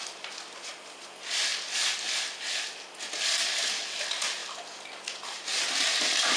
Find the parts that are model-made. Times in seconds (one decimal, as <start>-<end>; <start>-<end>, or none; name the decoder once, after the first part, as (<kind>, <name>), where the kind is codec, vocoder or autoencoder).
none